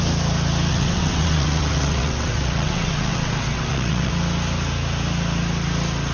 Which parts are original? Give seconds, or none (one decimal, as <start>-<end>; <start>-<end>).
0.0-0.7; 4.1-6.1